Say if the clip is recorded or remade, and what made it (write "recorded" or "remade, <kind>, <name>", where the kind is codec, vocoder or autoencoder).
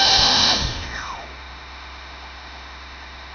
remade, autoencoder, DAC-VAE